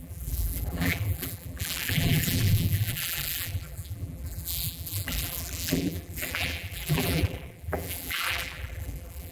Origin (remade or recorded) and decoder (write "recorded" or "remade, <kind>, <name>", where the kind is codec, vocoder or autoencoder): remade, vocoder, BigVGAN v2